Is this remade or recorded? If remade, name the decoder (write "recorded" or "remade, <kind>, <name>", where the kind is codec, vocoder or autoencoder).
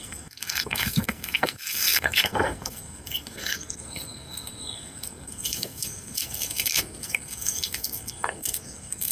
remade, codec, SNAC